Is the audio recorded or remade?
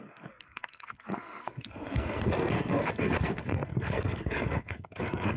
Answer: remade